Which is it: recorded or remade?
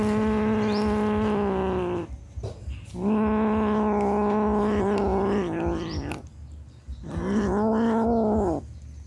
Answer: recorded